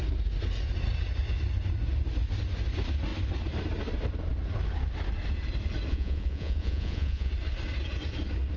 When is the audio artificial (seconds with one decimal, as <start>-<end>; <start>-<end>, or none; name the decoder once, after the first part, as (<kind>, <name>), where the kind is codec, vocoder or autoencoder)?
5.9-7.3 (vocoder, Vocos)